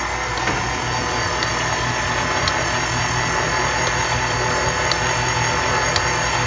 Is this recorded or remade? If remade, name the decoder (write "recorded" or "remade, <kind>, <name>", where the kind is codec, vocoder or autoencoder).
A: recorded